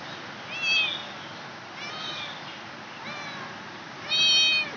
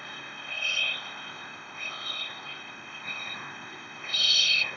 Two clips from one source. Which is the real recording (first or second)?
first